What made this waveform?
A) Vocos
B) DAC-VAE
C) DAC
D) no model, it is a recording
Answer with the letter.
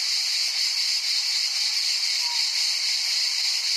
D